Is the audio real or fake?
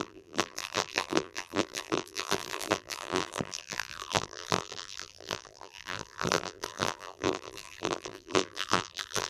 fake